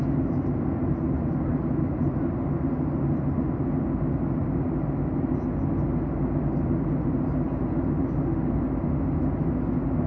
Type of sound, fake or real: real